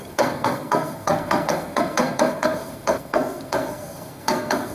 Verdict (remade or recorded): remade